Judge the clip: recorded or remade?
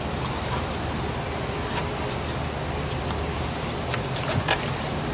recorded